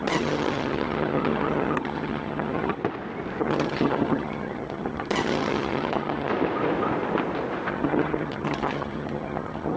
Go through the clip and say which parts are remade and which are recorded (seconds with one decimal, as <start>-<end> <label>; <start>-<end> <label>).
0.0-2.8 remade; 2.8-3.4 recorded; 3.4-6.3 remade; 6.3-7.7 recorded; 7.7-9.8 remade